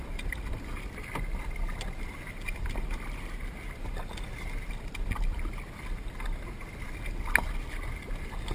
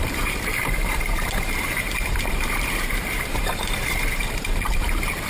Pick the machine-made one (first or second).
second